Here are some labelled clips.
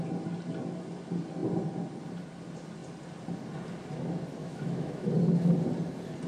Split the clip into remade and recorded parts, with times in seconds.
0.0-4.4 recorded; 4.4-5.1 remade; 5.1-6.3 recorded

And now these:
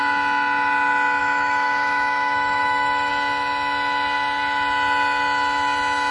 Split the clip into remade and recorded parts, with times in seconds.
0.0-1.2 recorded; 1.2-3.1 remade; 3.1-6.1 recorded

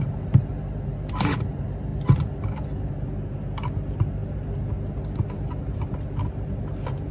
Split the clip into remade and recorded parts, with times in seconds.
0.0-7.1 recorded

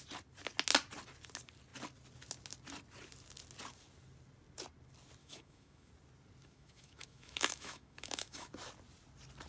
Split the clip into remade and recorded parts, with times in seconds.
0.0-5.2 recorded; 5.2-5.9 remade; 5.9-6.4 recorded; 6.4-8.5 remade; 8.5-9.5 recorded

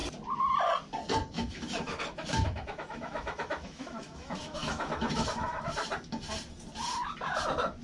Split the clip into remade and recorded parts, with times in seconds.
0.0-1.2 recorded; 1.2-5.7 remade; 5.7-7.8 recorded

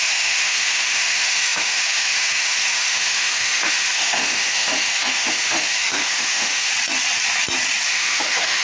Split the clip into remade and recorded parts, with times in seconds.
0.0-6.7 remade; 6.7-7.9 recorded; 7.9-8.6 remade

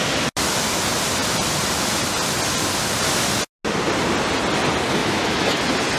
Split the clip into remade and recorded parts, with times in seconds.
0.0-5.0 recorded; 5.0-5.6 remade; 5.6-6.0 recorded

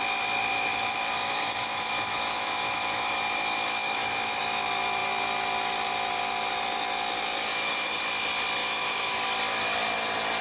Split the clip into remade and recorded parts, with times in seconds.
0.0-0.5 recorded; 0.5-4.4 remade; 4.4-7.5 recorded; 7.5-8.0 remade; 8.0-8.6 recorded; 8.6-9.2 remade; 9.2-10.4 recorded